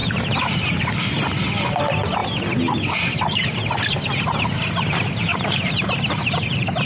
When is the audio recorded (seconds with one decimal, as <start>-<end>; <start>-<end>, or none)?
0.0-5.3